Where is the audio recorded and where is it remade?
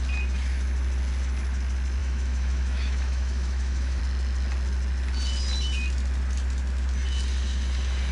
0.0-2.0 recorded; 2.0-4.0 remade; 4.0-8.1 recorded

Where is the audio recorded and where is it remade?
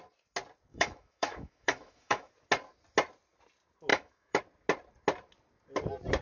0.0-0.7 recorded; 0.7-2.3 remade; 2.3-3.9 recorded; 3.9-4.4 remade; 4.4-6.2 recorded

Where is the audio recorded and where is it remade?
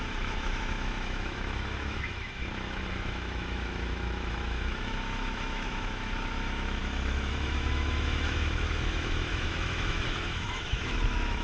0.0-11.4 remade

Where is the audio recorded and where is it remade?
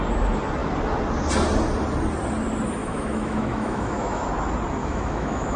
0.0-2.8 recorded; 2.8-4.2 remade; 4.2-4.8 recorded; 4.8-5.6 remade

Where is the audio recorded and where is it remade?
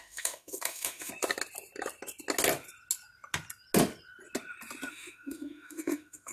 0.0-1.1 remade; 1.1-4.9 recorded; 4.9-6.3 remade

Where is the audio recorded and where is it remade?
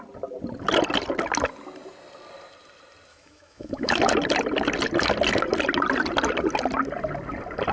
0.0-3.1 recorded; 3.1-4.0 remade; 4.0-7.7 recorded